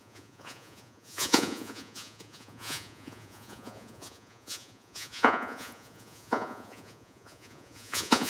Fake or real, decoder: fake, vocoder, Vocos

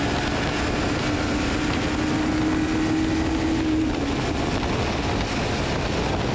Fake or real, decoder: real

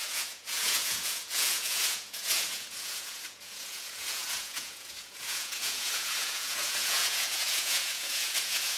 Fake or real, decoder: fake, vocoder, Vocos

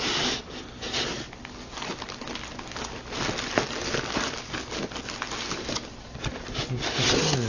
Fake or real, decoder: real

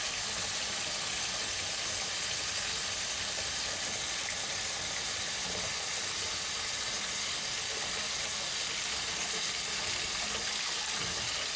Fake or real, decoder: real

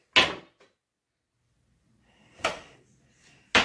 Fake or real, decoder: real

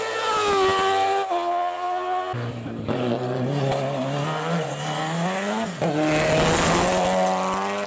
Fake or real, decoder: real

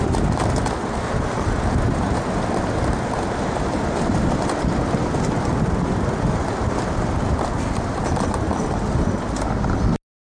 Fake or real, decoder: real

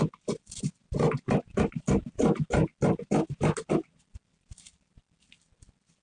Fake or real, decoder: real